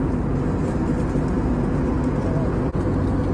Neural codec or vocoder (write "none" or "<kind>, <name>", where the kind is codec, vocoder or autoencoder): none